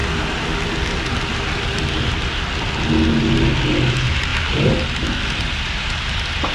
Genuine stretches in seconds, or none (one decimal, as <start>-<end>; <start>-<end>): 0.0-3.9; 4.3-5.7